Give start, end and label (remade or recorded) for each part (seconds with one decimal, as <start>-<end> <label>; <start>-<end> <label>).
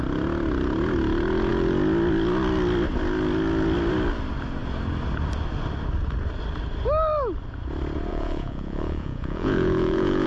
0.0-8.1 recorded; 8.1-10.3 remade